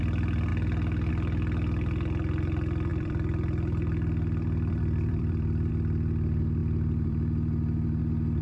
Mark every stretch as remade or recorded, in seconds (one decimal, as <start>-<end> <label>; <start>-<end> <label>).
0.0-2.9 recorded; 2.9-5.7 remade; 5.7-6.6 recorded; 6.6-8.0 remade; 8.0-8.4 recorded